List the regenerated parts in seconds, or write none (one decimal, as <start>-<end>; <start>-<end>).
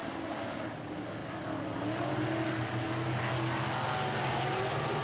none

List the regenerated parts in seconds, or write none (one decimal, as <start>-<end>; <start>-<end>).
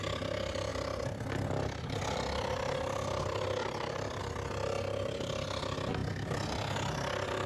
none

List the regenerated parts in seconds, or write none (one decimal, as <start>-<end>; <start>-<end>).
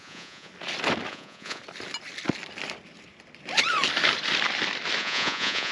0.0-0.5; 1.1-1.6; 5.0-5.7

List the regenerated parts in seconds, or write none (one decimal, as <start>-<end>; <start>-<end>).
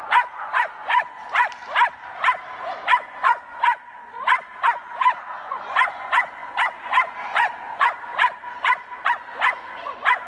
0.0-1.4; 2.7-10.3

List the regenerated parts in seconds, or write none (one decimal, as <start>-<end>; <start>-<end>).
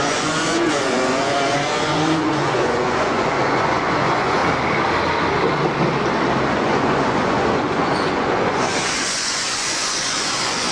0.0-4.4; 6.5-10.7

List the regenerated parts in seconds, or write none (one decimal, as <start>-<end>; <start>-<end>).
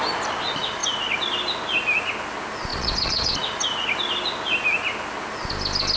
2.7-3.3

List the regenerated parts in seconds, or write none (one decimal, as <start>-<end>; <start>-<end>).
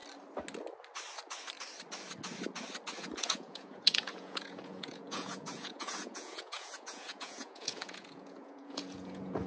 3.0-9.5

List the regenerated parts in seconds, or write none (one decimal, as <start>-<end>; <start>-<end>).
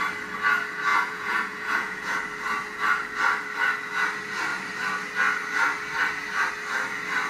0.9-2.2